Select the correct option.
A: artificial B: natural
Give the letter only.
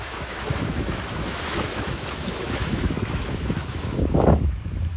A